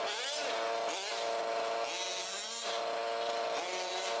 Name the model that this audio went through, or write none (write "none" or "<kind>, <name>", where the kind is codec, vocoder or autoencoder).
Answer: none